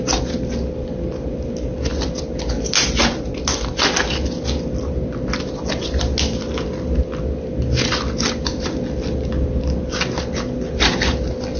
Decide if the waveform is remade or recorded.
recorded